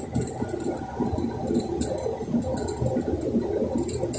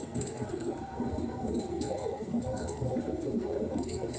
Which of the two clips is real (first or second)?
first